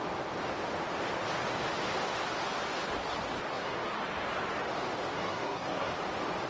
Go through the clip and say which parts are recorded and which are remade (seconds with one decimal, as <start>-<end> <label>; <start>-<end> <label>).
0.0-3.5 recorded; 3.5-4.0 remade; 4.0-5.1 recorded; 5.1-5.9 remade; 5.9-6.5 recorded